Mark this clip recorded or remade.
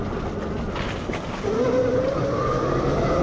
recorded